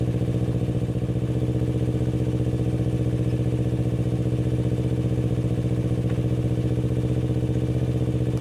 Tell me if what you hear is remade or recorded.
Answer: recorded